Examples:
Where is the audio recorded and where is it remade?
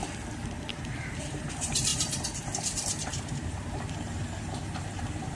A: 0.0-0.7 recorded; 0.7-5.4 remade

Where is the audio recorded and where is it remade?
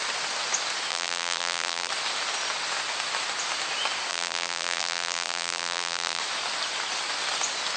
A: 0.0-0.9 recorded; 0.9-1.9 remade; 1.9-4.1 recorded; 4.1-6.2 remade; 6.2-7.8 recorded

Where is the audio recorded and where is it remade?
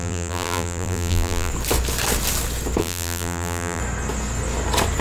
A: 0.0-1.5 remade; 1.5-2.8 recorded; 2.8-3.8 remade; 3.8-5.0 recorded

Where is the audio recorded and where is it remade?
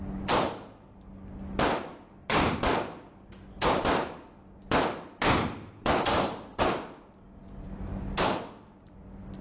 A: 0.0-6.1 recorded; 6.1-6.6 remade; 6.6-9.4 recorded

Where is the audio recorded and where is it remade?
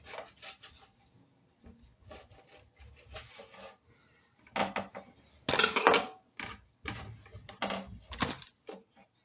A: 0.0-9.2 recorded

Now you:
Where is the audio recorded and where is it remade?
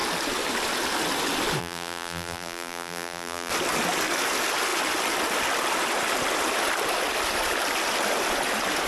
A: 0.0-1.6 recorded; 1.6-3.5 remade; 3.5-8.9 recorded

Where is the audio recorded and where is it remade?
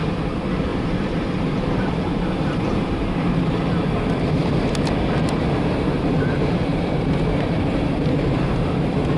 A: 0.0-0.7 recorded; 0.7-4.0 remade; 4.0-5.4 recorded; 5.4-6.0 remade; 6.0-6.7 recorded; 6.7-8.5 remade; 8.5-9.2 recorded